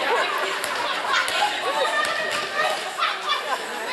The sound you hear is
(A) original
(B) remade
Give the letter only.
A